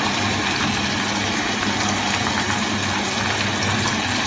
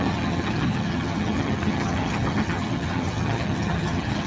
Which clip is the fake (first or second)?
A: second